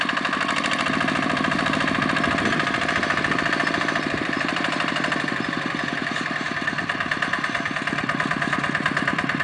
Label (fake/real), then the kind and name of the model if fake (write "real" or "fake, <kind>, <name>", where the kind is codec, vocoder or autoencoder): fake, vocoder, BigVGAN v2